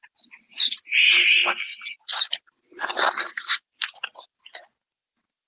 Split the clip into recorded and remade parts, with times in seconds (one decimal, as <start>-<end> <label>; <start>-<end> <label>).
0.0-5.5 recorded